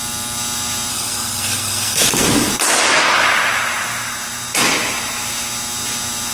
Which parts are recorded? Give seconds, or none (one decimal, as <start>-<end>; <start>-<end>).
0.0-0.9; 2.5-6.3